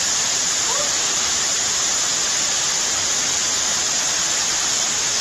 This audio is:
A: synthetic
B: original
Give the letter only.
A